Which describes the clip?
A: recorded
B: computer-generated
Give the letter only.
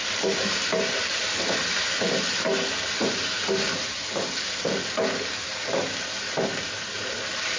A